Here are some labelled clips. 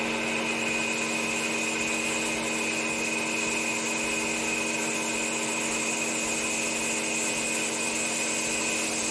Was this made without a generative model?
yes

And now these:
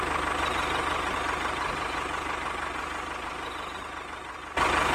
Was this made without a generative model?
yes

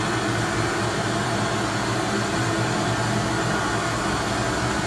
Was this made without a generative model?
yes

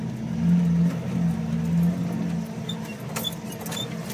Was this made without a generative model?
yes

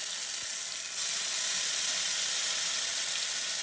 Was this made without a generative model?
yes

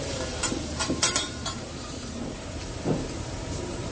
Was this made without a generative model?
no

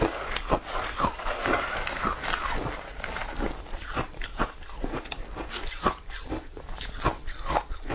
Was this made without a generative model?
yes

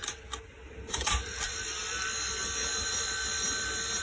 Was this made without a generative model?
no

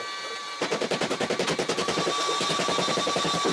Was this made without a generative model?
yes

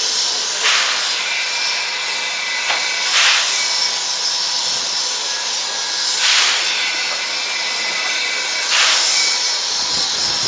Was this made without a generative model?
yes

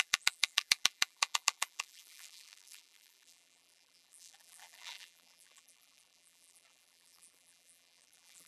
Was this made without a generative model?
no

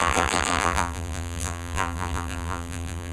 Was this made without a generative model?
no